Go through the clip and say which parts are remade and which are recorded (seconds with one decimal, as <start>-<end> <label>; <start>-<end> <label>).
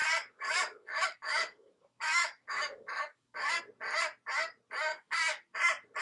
0.0-3.6 remade; 3.6-4.9 recorded; 4.9-5.6 remade; 5.6-6.0 recorded